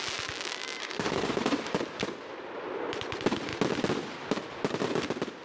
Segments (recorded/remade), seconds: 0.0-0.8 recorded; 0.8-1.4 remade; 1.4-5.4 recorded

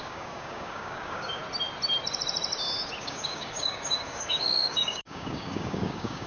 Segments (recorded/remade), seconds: 0.0-1.4 remade; 1.4-3.0 recorded; 3.0-6.3 remade

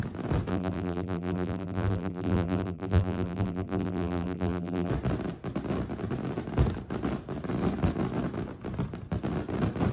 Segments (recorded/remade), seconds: 0.0-0.5 recorded; 0.5-4.9 remade; 4.9-9.9 recorded

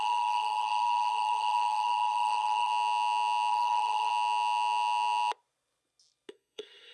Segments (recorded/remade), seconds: 0.0-2.7 remade; 2.7-3.5 recorded; 3.5-4.1 remade; 4.1-6.3 recorded; 6.3-6.9 remade

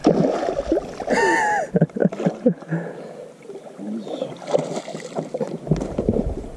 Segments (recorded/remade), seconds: 0.0-6.6 recorded

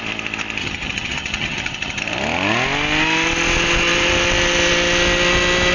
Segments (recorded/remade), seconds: 0.0-0.6 recorded; 0.6-2.0 remade; 2.0-5.7 recorded